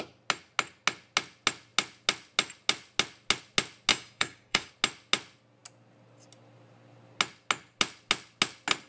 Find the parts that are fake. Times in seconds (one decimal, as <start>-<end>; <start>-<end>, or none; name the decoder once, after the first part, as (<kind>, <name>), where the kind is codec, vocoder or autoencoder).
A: 3.9-4.7 (codec, DAC)

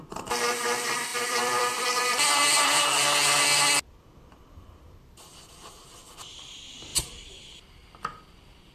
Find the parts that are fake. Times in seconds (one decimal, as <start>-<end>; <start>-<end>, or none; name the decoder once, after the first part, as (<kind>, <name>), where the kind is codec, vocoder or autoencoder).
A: 1.1-2.8 (vocoder, BigVGAN v2); 6.9-8.0

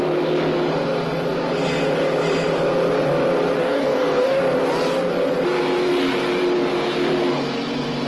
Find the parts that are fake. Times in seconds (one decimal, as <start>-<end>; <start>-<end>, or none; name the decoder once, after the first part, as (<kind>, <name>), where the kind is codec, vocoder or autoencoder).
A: 3.6-4.4 (codec, DAC)